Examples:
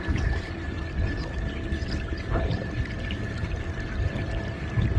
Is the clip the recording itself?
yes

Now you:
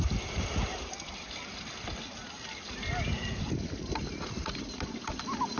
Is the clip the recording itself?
yes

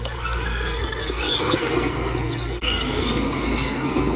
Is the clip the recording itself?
no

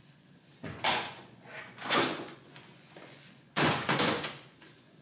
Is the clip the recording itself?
no